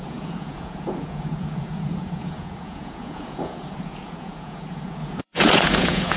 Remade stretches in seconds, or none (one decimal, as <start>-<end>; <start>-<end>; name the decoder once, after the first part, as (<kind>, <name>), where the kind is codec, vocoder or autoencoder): 0.0-6.2 (vocoder, Vocos)